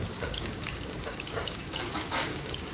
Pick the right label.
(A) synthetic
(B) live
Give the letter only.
A